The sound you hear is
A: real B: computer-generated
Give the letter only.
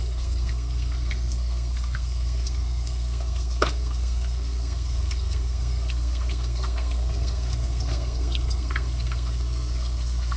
B